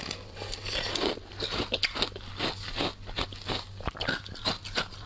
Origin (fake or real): real